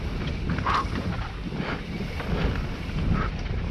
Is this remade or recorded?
recorded